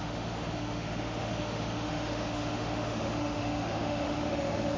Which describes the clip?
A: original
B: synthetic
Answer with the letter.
B